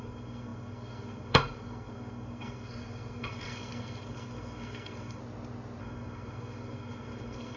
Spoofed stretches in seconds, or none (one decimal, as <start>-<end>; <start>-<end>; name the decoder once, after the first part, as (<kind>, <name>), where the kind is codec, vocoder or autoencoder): 0.0-5.2 (codec, SNAC); 5.8-7.6